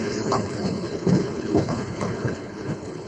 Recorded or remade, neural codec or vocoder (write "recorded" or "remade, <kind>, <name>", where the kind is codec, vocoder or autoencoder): remade, codec, HILCodec